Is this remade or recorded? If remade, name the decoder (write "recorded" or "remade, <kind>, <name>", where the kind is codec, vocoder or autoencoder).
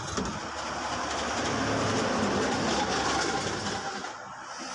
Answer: recorded